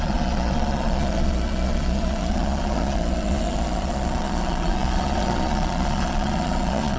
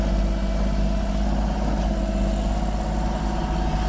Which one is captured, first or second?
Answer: second